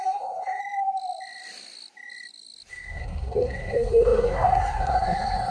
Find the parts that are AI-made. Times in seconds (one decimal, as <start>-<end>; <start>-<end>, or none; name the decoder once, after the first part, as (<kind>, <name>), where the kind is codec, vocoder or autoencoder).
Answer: 0.0-0.6 (codec, SNAC); 2.7-5.5